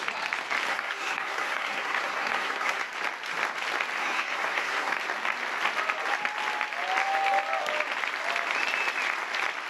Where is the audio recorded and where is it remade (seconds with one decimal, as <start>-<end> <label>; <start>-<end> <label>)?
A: 0.0-0.7 recorded; 0.7-2.9 remade; 2.9-4.0 recorded; 4.0-5.0 remade; 5.0-9.7 recorded